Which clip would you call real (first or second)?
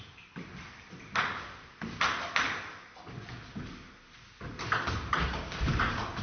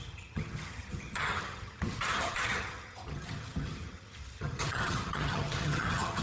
first